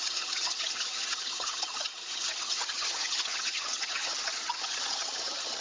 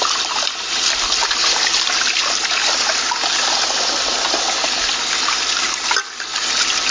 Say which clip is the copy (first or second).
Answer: first